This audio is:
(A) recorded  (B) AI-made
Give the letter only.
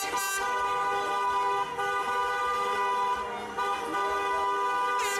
A